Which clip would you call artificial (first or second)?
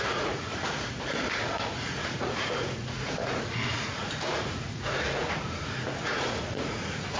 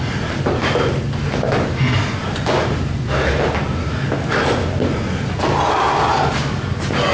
first